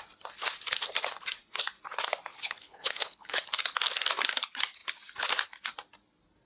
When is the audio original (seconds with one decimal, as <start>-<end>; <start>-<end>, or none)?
0.0-2.3; 3.4-6.5